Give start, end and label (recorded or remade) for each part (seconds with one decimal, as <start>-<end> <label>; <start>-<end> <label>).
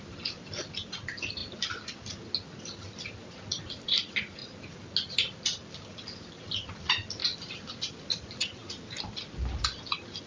0.0-10.3 recorded